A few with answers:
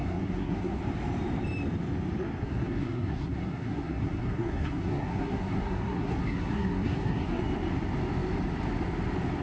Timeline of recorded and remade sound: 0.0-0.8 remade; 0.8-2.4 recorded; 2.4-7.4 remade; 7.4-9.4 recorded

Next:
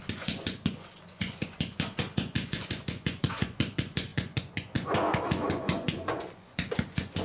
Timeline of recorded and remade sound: 0.0-7.2 remade

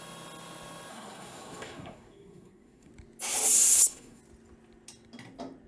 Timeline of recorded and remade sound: 0.0-0.9 recorded; 0.9-2.9 remade; 2.9-3.6 recorded; 3.6-4.2 remade; 4.2-5.7 recorded

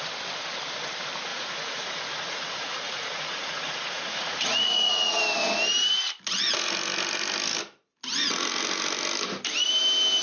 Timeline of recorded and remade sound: 0.0-1.3 recorded; 1.3-5.2 remade; 5.2-10.2 recorded

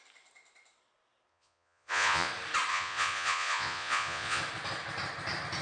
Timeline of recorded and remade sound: 0.0-1.3 recorded; 1.3-2.3 remade; 2.3-2.7 recorded; 2.7-4.4 remade; 4.4-5.6 recorded

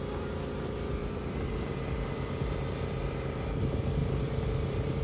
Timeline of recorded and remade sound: 0.0-1.0 recorded; 1.0-3.6 remade; 3.6-4.0 recorded; 4.0-5.0 remade

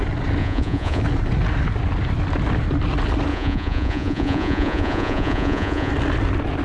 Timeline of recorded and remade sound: 0.0-0.4 recorded; 0.4-1.0 remade; 1.0-3.3 recorded; 3.3-5.9 remade; 5.9-6.6 recorded

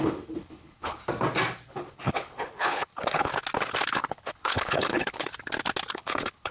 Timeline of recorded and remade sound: 0.0-1.0 remade; 1.0-1.7 recorded; 1.7-3.3 remade; 3.3-4.0 recorded; 4.0-5.3 remade; 5.3-5.9 recorded; 5.9-6.5 remade